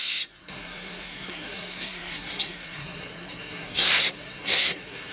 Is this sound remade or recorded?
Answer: remade